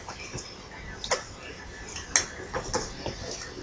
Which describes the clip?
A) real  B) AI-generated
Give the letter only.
A